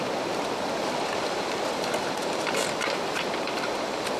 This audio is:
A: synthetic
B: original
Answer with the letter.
A